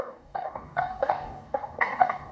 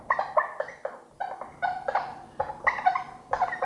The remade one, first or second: first